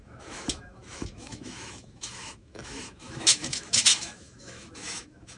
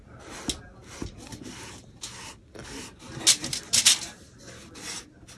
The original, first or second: second